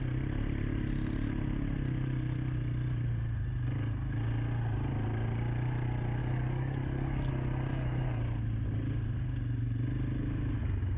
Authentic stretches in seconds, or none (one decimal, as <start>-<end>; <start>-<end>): 0.0-6.2; 7.3-7.7; 8.2-11.0